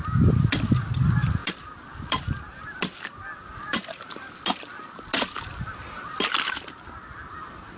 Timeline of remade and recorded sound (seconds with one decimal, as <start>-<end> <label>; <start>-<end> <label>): 0.0-7.8 recorded